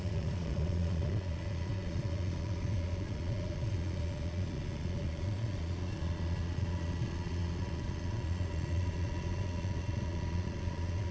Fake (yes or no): yes